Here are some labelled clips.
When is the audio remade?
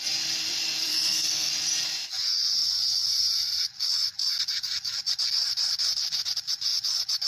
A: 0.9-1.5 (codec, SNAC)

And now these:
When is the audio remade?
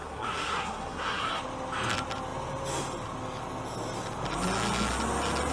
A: 0.0-1.4 (codec, SNAC)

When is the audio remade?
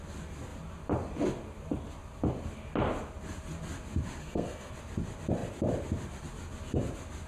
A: 4.2-4.7 (codec, SNAC)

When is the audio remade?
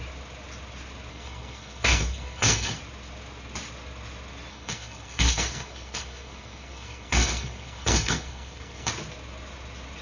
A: 1.1-2.8 (codec, SNAC); 4.5-8.9